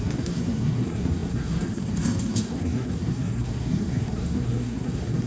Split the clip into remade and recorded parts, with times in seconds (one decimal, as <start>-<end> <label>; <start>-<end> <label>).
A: 0.0-5.3 remade